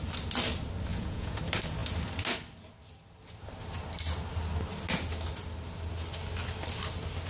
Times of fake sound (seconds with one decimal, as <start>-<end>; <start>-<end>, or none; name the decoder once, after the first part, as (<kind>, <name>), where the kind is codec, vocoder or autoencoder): 0.9-1.4 (vocoder, Vocos)